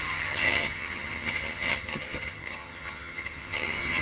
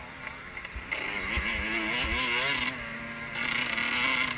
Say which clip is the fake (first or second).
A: first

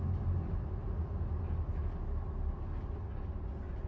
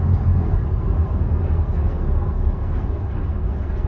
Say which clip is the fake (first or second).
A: second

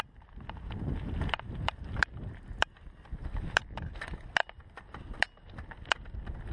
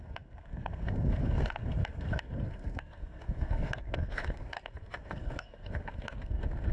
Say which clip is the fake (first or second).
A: second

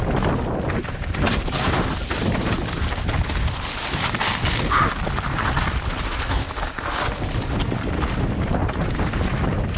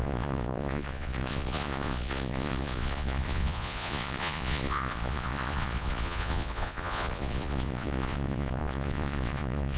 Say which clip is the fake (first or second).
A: second